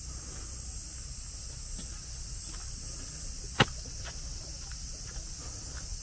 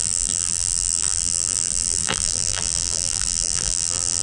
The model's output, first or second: second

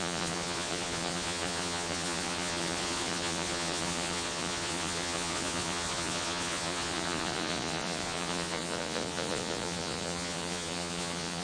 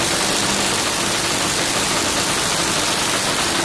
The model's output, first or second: first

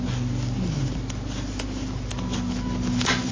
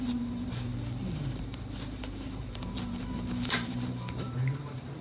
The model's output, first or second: second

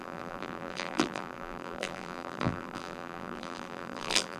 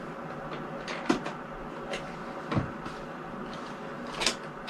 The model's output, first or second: first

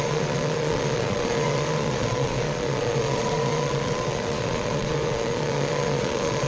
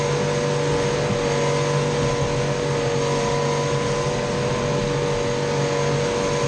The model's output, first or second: first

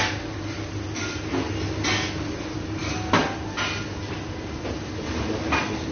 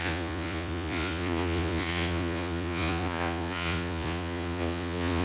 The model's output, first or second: second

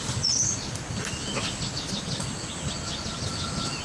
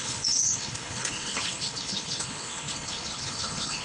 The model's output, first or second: second